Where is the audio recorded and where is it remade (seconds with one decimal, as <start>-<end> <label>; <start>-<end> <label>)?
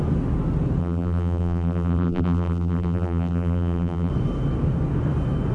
0.0-0.8 recorded; 0.8-4.1 remade; 4.1-5.5 recorded